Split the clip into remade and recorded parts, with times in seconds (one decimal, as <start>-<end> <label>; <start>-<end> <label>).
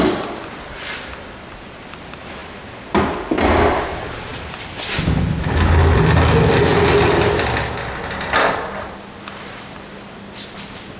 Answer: 0.0-11.0 recorded